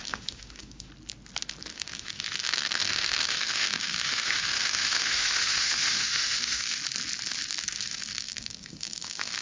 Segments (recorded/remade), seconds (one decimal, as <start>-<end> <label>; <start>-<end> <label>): 0.0-0.9 remade; 0.9-1.7 recorded; 1.7-6.8 remade; 6.8-7.6 recorded; 7.6-9.4 remade